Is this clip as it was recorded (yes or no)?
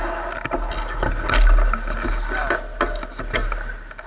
yes